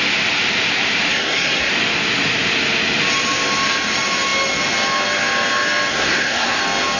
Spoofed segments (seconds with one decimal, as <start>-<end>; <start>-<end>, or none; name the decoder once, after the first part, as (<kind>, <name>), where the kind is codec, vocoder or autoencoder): 1.1-1.7 (codec, SNAC); 5.9-6.6